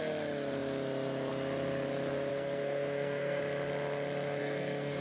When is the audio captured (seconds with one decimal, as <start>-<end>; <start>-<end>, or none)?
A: 0.0-2.3; 3.4-4.4